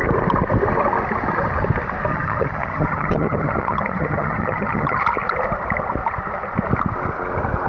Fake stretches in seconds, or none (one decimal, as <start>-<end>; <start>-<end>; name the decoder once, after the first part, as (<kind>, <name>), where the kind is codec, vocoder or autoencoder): 2.1-5.0 (vocoder, HiFi-GAN)